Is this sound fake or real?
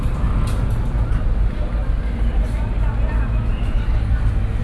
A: real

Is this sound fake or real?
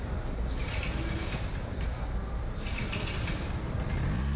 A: real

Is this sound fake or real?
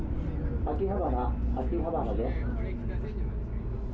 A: real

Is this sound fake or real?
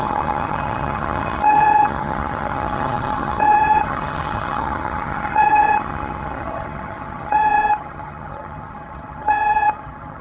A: fake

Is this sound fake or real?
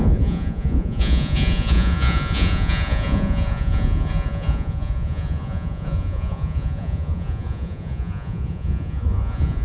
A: fake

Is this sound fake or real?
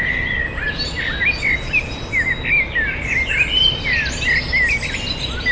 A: real